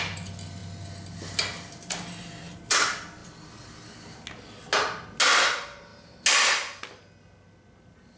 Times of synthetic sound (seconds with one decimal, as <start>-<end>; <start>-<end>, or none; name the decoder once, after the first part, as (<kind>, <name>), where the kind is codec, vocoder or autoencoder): none